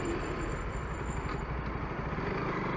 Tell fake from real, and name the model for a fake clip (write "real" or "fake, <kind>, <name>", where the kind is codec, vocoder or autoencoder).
real